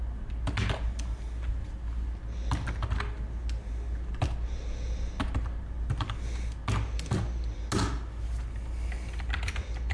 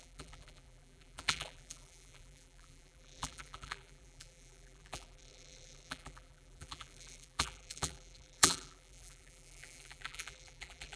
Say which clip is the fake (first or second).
second